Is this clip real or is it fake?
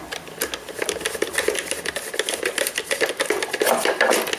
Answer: real